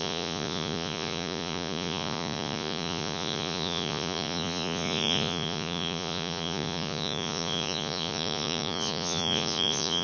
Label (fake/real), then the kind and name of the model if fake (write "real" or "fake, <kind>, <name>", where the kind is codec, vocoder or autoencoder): fake, vocoder, Vocos